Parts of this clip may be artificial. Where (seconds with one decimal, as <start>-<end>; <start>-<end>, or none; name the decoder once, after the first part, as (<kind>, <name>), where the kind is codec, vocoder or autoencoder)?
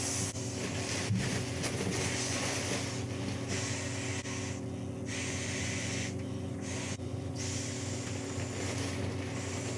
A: 1.3-2.6 (vocoder, Vocos); 5.1-7.4